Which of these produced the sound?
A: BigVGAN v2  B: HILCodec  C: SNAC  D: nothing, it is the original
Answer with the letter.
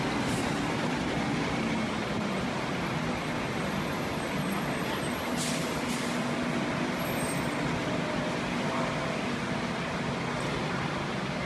D